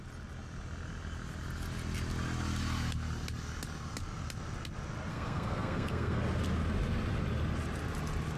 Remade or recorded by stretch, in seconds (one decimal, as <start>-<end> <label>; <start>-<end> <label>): 0.0-5.1 recorded; 5.1-6.2 remade; 6.2-8.4 recorded